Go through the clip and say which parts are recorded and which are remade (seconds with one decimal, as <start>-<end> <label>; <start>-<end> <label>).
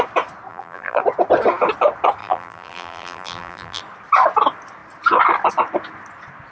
0.0-0.5 recorded; 0.5-1.0 remade; 1.0-2.2 recorded; 2.2-3.8 remade; 3.8-6.5 recorded